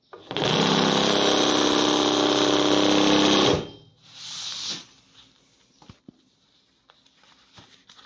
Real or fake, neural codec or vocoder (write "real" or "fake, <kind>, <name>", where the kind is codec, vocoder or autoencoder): real